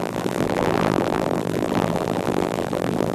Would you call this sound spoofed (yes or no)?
yes